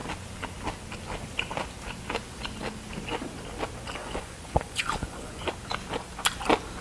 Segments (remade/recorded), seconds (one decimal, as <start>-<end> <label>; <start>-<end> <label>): 0.0-4.0 recorded; 4.0-5.5 remade; 5.5-6.8 recorded